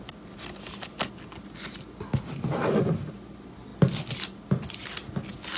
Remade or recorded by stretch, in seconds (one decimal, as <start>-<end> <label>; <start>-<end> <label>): 0.0-5.6 recorded